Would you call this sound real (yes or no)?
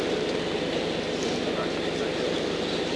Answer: yes